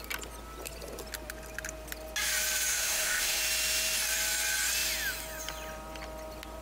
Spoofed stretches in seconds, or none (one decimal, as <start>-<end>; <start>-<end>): 2.7-3.4